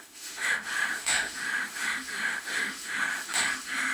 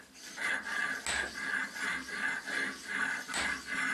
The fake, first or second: first